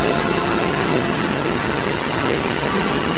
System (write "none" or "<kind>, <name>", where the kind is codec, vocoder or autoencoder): vocoder, HiFi-GAN